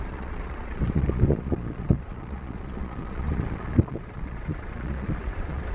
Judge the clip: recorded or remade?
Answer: remade